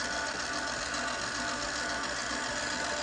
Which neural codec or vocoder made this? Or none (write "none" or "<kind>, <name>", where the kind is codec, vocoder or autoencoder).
none